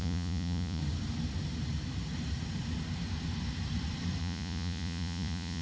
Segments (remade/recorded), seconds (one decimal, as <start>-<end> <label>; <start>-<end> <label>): 0.0-0.8 remade; 0.8-4.2 recorded; 4.2-5.6 remade